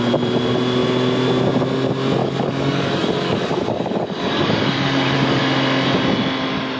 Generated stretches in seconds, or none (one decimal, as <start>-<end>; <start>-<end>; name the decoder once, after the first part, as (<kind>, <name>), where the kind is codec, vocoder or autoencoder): 2.2-5.4 (codec, DAC)